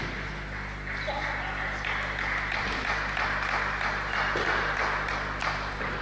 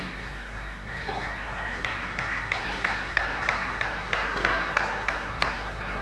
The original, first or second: first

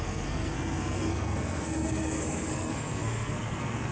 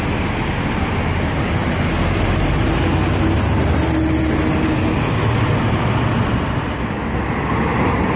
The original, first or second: second